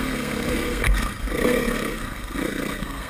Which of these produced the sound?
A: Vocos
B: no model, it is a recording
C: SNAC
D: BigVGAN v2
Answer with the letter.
C